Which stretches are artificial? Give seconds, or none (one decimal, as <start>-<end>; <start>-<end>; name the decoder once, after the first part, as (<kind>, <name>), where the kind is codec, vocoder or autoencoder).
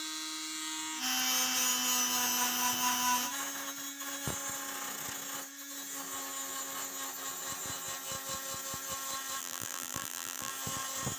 9.4-10.5 (vocoder, BigVGAN v2)